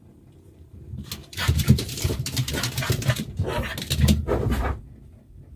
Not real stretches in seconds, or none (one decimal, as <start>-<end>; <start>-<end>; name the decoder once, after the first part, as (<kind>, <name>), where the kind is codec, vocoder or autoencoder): 1.2-2.6 (vocoder, BigVGAN v2)